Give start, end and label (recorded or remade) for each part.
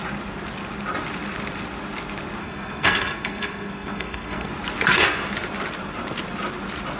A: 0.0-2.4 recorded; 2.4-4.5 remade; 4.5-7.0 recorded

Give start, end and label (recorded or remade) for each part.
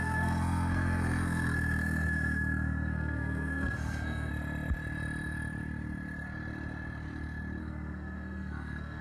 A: 0.0-4.3 remade; 4.3-7.6 recorded; 7.6-9.0 remade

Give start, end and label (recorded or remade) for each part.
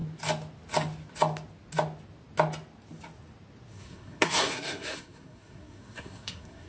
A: 0.0-3.7 recorded; 3.7-6.7 remade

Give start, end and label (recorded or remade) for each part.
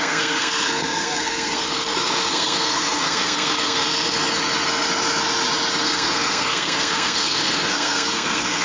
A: 0.0-4.2 remade; 4.2-5.8 recorded; 5.8-8.6 remade